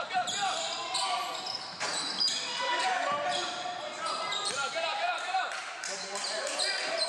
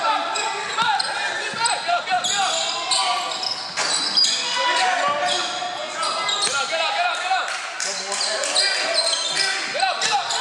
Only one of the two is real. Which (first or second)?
second